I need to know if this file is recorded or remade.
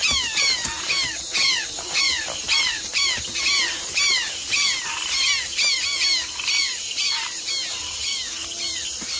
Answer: recorded